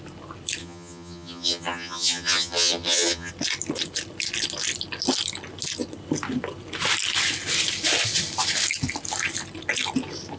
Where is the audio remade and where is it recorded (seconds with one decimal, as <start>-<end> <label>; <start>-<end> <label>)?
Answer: 0.0-0.6 recorded; 0.6-3.3 remade; 3.3-10.4 recorded